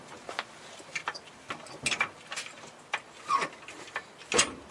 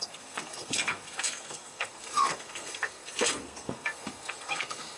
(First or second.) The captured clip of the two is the first